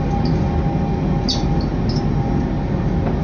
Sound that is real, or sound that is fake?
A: real